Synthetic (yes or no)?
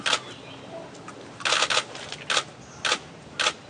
no